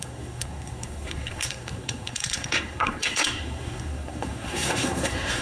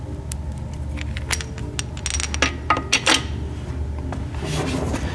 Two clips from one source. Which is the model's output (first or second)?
first